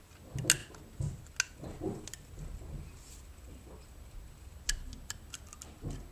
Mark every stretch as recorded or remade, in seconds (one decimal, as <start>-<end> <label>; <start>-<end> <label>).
0.0-6.1 recorded